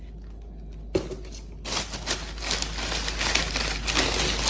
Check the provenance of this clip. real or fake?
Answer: real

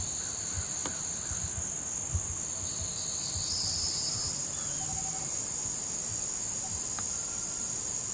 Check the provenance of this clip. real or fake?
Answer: real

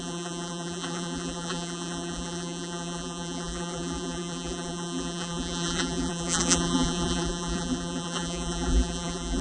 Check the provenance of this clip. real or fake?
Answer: fake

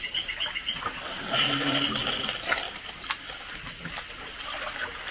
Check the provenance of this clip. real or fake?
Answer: real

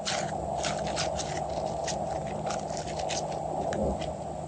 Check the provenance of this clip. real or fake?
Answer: real